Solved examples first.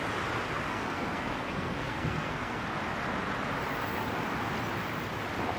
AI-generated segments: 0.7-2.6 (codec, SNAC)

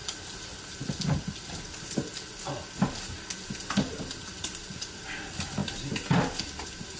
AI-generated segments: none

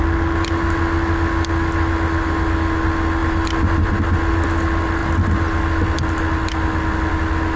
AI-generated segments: none